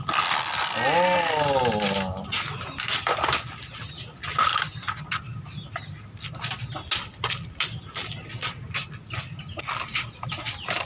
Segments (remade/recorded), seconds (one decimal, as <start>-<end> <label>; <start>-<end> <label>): 0.0-10.9 recorded